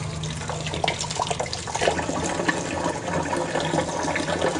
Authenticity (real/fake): real